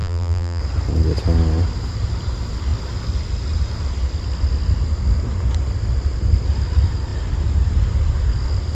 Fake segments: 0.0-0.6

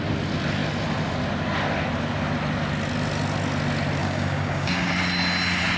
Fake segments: 4.0-4.9

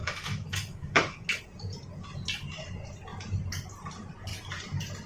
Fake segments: 0.0-1.4

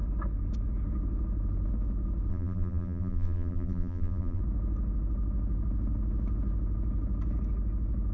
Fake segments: 2.3-4.4

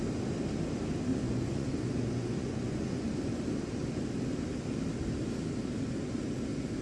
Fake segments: 1.1-3.2

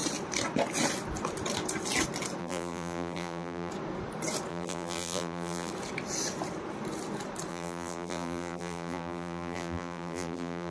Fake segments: 2.4-3.7; 4.5-5.7; 7.5-10.7

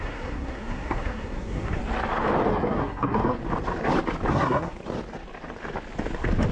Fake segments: 0.0-1.8; 2.5-3.4; 4.3-4.8